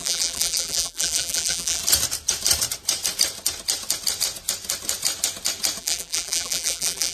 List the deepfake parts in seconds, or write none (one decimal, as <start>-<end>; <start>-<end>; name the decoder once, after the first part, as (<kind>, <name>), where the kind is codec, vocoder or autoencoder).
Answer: 0.0-1.8 (vocoder, BigVGAN v2); 5.8-7.1